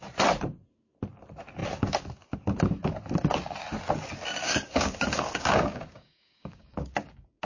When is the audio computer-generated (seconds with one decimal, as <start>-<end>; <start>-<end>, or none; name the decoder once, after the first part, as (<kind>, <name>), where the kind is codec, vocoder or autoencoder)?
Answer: 4.4-7.4 (codec, DAC)

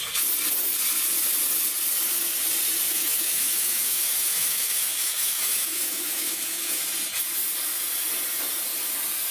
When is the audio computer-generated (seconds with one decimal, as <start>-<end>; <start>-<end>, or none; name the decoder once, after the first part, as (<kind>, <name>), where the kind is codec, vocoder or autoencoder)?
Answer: 2.9-6.8 (autoencoder, DAC-VAE)

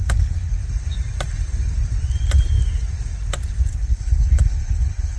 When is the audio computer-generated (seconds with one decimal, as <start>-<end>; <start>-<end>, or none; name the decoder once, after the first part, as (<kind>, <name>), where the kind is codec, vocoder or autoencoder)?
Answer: 0.0-0.6 (codec, HILCodec); 3.7-5.2

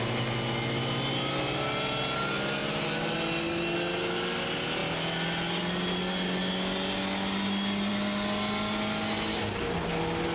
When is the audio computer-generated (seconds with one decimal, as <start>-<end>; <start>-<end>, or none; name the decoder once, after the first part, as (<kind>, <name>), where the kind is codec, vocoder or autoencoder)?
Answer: none

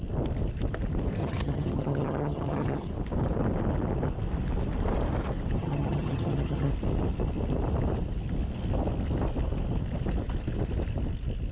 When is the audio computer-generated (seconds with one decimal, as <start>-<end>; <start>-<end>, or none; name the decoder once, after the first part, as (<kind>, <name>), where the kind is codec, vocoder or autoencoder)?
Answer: 1.2-2.9 (vocoder, HiFi-GAN); 5.6-6.7